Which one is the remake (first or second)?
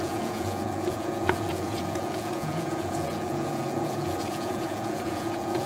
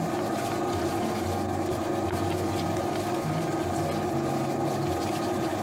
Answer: first